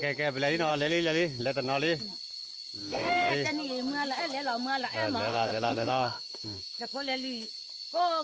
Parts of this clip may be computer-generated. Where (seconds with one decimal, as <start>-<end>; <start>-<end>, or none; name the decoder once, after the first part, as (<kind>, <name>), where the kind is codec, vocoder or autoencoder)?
0.7-1.4 (autoencoder, DAC-VAE); 2.8-3.3; 5.3-7.5